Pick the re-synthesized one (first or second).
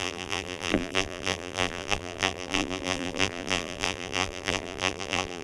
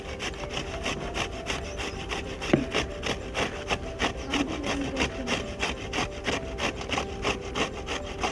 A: first